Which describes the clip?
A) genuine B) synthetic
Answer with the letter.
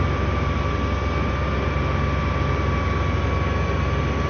A